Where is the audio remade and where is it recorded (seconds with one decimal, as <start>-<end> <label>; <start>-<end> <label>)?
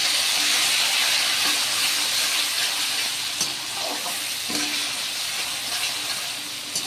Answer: 0.0-6.9 recorded